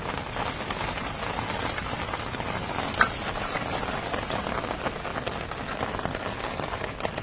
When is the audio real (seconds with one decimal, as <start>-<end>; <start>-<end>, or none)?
0.0-7.2